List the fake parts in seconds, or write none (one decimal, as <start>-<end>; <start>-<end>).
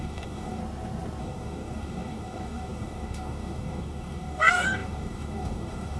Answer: 0.0-0.6; 1.2-6.0